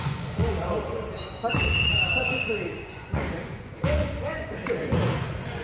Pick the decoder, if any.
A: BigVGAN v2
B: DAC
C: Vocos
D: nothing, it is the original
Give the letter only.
C